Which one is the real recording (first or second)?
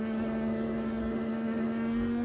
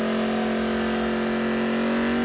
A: second